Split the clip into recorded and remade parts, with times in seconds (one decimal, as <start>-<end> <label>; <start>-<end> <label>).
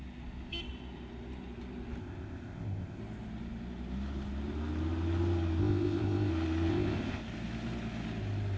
0.0-2.0 recorded; 2.0-3.0 remade; 3.0-5.6 recorded; 5.6-6.3 remade; 6.3-6.7 recorded; 6.7-7.2 remade; 7.2-8.6 recorded